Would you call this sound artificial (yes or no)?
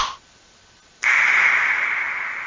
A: no